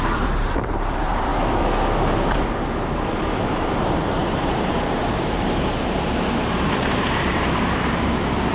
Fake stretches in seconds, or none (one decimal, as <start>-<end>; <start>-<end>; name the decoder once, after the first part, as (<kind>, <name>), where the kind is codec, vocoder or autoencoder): 0.0-1.3 (vocoder, BigVGAN v2); 3.3-8.5